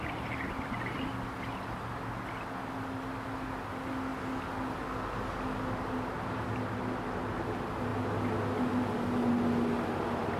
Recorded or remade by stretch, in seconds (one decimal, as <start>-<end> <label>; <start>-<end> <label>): 0.0-10.4 recorded